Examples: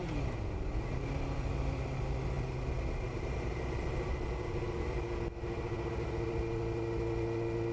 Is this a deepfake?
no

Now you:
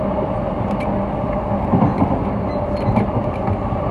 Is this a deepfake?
no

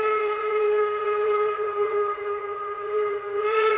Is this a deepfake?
yes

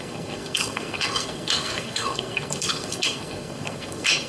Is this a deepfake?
yes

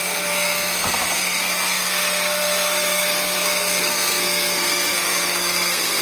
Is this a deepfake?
yes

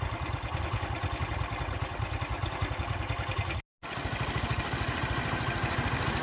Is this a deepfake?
no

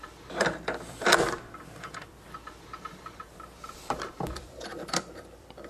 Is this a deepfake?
yes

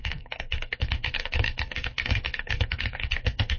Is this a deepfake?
yes